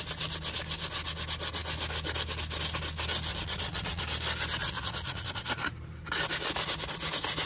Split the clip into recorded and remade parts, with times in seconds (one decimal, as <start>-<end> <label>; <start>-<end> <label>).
0.0-3.3 recorded; 3.3-4.0 remade; 4.0-4.6 recorded; 4.6-5.4 remade; 5.4-7.5 recorded

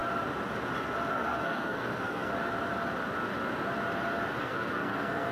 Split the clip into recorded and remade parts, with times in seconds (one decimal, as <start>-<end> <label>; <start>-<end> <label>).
0.0-1.1 recorded; 1.1-2.3 remade; 2.3-4.4 recorded; 4.4-5.3 remade

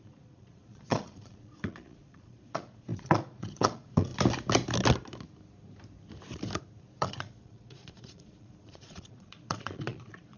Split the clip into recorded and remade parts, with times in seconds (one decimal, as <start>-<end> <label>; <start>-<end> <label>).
0.0-4.1 remade; 4.1-6.8 recorded; 6.8-10.4 remade

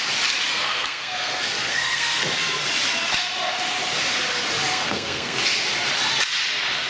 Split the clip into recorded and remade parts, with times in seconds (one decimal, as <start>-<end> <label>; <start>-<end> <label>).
0.0-0.5 recorded; 0.5-2.3 remade; 2.3-4.7 recorded; 4.7-5.4 remade; 5.4-6.9 recorded

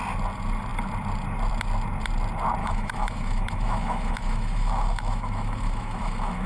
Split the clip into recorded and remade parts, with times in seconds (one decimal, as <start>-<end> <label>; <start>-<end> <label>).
0.0-2.6 recorded; 2.6-6.5 remade

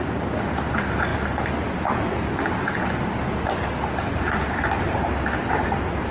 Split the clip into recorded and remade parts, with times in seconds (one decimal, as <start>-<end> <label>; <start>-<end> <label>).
0.0-1.1 recorded; 1.1-4.8 remade; 4.8-6.1 recorded

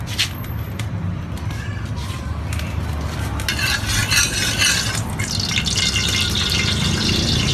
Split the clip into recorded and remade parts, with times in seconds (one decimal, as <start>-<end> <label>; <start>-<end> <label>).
0.0-7.5 recorded

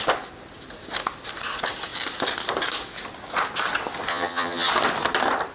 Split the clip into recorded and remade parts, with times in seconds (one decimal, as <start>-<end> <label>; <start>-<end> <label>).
0.0-4.1 recorded; 4.1-4.7 remade; 4.7-5.5 recorded